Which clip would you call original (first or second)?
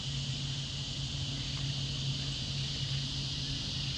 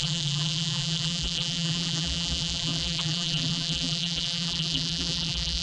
first